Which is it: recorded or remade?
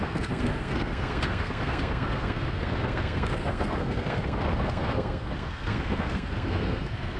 remade